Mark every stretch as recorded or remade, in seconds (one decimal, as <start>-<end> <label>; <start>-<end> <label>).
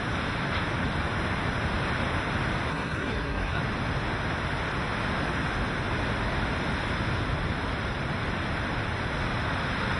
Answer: 0.0-2.7 recorded; 2.7-3.6 remade; 3.6-10.0 recorded